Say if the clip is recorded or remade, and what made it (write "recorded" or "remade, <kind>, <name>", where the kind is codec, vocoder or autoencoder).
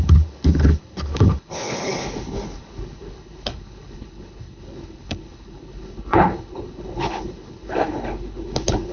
remade, codec, HILCodec